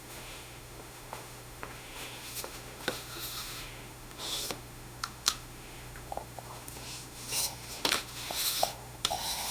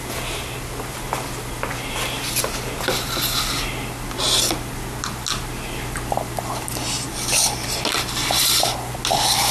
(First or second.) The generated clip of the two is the first